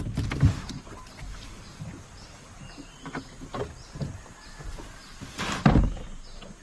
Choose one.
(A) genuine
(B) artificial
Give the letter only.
A